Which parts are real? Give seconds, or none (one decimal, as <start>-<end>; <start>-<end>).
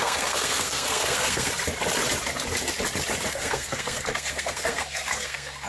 1.5-3.3